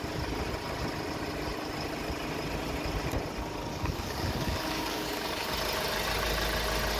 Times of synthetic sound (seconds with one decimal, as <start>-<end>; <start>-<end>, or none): 3.7-5.5